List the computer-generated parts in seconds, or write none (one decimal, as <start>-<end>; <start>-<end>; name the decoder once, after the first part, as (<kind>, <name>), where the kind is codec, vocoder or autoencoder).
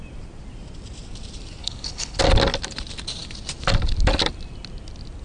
1.6-2.2 (codec, HILCodec)